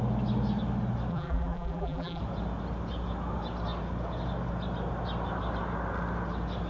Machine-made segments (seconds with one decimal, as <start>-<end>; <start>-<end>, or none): 1.1-2.2